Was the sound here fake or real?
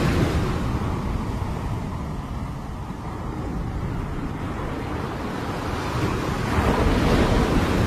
real